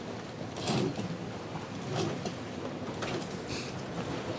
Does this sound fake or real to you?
real